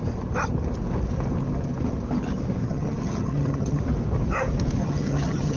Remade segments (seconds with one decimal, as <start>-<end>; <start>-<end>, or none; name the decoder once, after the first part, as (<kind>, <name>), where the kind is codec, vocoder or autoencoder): 2.6-3.8 (vocoder, HiFi-GAN); 4.8-5.6

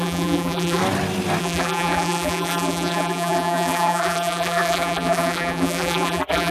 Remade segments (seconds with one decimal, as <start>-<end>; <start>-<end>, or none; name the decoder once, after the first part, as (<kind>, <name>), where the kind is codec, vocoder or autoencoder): 0.0-0.8 (vocoder, BigVGAN v2); 1.4-6.5